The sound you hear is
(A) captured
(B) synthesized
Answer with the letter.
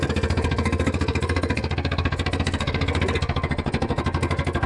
B